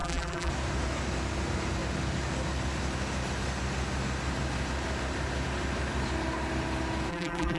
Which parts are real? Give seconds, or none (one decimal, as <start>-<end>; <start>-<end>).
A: 0.5-7.1